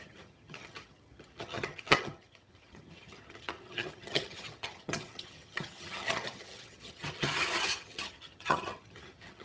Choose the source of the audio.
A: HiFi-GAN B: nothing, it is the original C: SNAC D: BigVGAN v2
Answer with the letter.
A